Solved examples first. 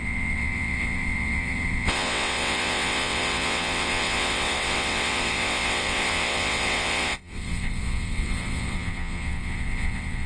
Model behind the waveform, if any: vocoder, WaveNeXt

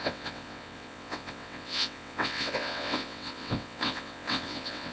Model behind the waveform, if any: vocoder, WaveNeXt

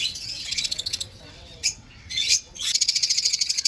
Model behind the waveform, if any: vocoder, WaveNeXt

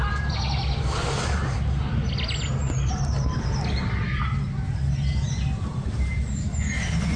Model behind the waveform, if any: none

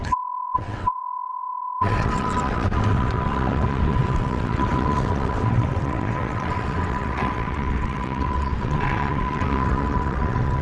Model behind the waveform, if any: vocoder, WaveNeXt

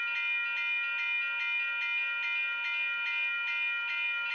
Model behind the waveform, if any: none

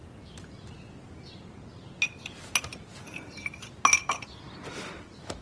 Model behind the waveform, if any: none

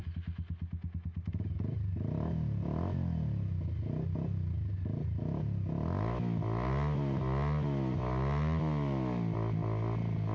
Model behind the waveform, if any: none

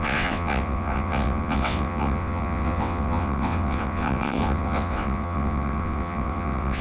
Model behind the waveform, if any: vocoder, WaveNeXt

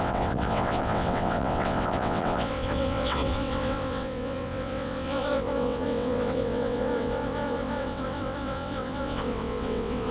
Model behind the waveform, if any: vocoder, WaveNeXt